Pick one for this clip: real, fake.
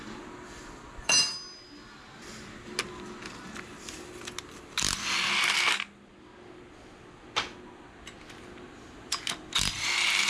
real